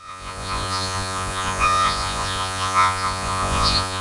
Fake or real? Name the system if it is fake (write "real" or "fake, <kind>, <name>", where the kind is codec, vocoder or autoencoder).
fake, vocoder, Vocos